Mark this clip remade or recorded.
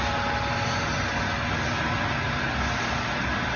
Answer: recorded